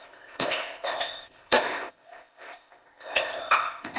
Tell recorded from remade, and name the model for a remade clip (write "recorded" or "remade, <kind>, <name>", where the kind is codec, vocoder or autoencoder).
remade, codec, ZipCodec